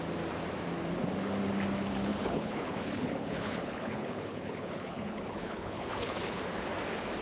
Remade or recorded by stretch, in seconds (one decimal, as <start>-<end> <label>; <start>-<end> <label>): 0.0-2.1 recorded; 2.1-6.4 remade; 6.4-7.2 recorded